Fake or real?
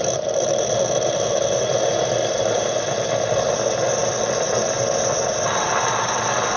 real